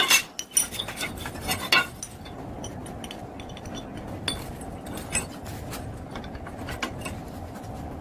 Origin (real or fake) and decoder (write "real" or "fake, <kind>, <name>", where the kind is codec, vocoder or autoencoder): real